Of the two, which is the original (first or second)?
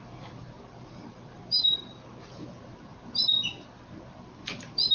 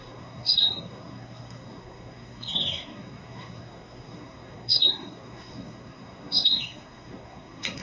first